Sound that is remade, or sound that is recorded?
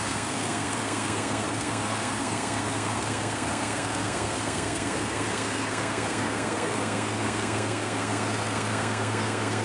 remade